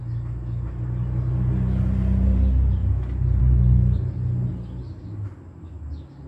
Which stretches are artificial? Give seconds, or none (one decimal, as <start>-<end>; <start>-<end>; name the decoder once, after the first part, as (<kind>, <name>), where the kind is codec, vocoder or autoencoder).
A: none